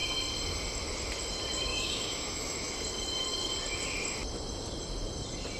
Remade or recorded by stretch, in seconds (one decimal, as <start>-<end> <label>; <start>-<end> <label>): 0.0-1.7 recorded; 1.7-2.7 remade; 2.7-5.6 recorded